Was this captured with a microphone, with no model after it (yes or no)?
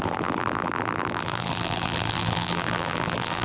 no